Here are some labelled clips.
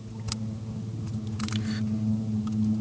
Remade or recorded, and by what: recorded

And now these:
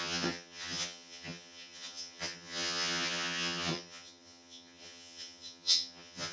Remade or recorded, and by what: remade, vocoder, HiFi-GAN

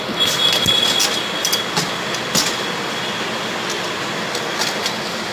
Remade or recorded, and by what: recorded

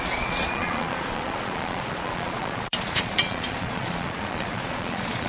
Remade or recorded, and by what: remade, vocoder, Vocos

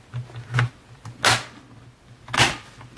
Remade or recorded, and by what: recorded